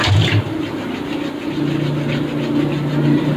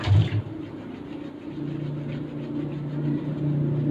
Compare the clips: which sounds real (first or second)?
first